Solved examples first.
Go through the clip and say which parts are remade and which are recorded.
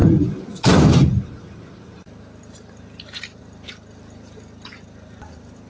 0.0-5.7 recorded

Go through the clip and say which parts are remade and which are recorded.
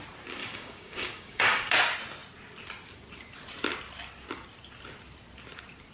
0.0-0.4 recorded; 0.4-1.7 remade; 1.7-5.9 recorded